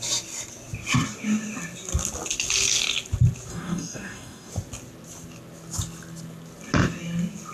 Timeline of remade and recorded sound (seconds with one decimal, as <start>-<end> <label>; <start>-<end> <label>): 0.0-3.5 recorded; 3.5-4.5 remade; 4.5-7.5 recorded